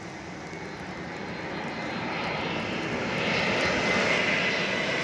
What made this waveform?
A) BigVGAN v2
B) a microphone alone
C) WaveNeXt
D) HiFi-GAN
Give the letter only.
B